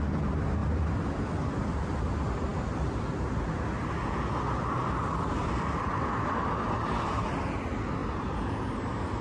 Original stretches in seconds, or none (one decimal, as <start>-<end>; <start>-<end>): 0.0-0.6; 2.1-8.0